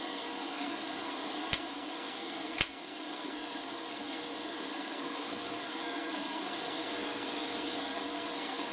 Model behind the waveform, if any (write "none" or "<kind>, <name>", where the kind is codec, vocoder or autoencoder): codec, SNAC